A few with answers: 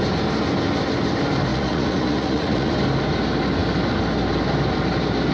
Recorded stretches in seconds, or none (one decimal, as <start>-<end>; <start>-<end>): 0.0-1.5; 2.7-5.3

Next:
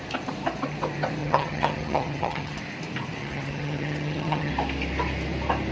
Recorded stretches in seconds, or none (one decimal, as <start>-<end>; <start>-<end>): 0.0-1.2; 2.6-3.2; 4.5-5.7

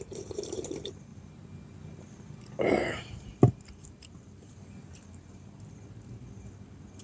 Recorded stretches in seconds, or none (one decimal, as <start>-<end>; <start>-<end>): 1.1-2.7; 4.8-7.0